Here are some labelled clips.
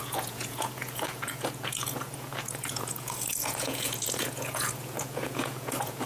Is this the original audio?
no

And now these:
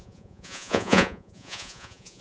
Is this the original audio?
no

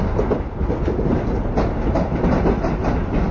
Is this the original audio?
yes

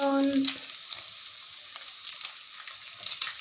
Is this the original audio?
yes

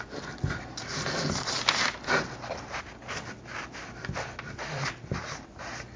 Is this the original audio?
yes